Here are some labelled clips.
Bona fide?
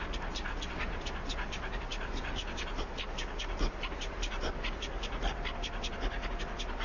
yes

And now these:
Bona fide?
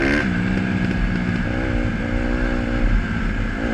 yes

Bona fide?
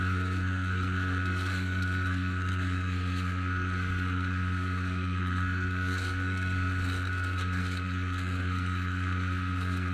no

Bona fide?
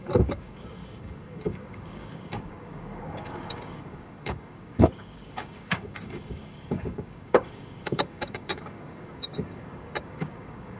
no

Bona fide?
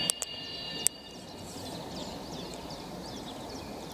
yes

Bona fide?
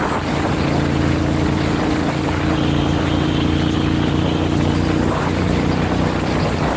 yes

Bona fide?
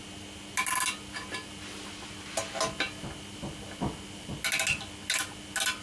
yes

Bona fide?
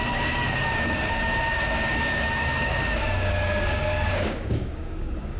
no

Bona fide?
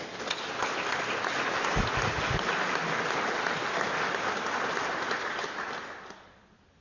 yes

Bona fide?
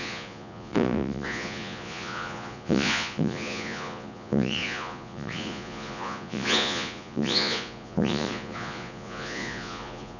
no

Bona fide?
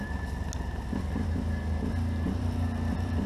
yes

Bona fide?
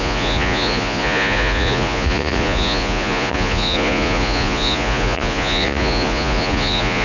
no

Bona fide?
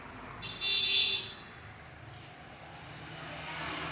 yes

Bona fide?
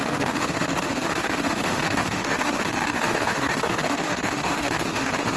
no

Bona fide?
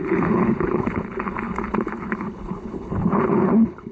no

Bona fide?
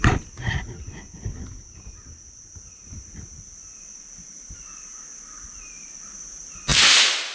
yes